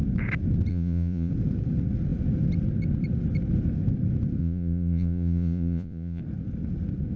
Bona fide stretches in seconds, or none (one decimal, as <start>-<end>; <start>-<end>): 0.0-0.7; 1.3-4.4; 6.2-7.2